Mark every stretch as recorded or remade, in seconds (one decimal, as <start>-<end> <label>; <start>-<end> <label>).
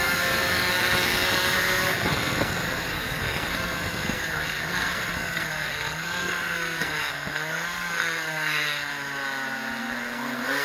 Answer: 0.0-8.9 remade; 8.9-9.8 recorded; 9.8-10.6 remade